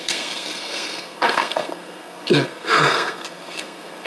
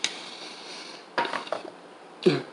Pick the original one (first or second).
second